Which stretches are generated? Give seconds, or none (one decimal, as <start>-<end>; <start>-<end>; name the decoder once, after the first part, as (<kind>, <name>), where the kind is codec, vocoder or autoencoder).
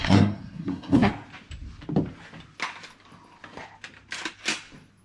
0.0-1.1 (codec, SNAC)